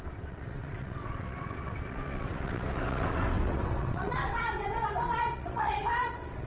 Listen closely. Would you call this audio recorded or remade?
remade